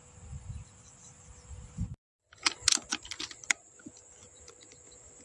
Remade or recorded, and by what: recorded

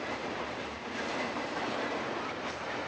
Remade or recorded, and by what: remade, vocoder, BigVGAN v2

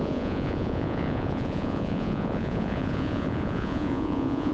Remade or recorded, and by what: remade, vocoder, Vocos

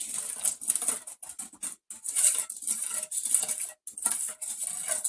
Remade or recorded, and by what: recorded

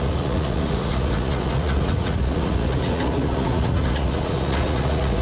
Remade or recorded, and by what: remade, vocoder, Vocos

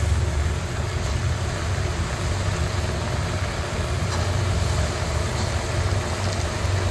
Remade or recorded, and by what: recorded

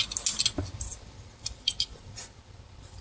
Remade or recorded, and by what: recorded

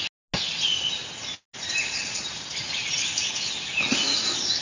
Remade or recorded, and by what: recorded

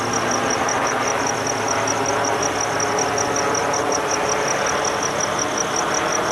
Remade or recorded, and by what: recorded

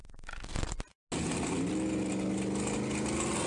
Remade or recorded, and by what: recorded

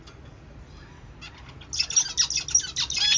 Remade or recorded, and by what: recorded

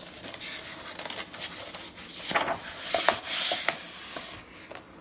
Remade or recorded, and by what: recorded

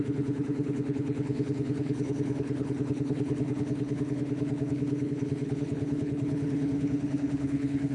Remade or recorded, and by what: remade, codec, HILCodec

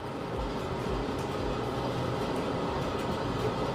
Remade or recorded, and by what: recorded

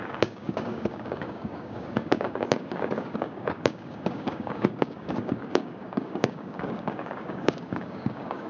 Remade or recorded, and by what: remade, codec, DAC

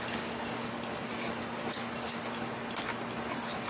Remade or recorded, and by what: recorded